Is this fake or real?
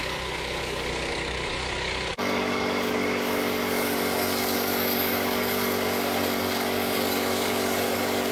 fake